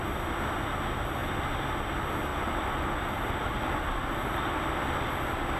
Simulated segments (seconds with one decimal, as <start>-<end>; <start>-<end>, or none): 2.3-5.6